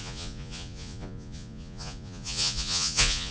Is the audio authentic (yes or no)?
no